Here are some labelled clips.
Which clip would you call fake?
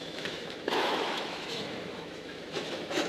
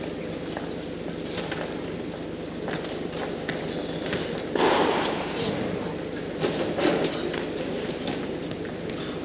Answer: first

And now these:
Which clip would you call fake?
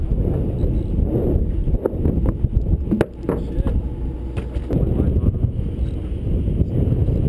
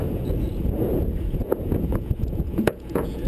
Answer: second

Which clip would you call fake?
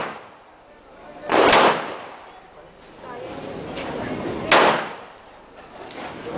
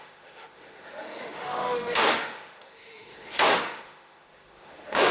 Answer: second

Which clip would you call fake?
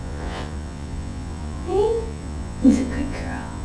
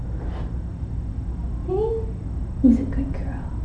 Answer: first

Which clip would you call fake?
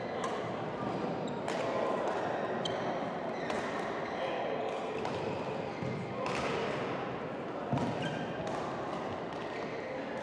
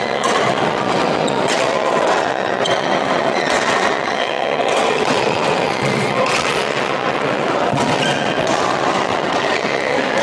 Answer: second